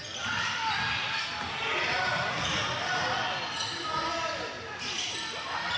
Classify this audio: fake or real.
real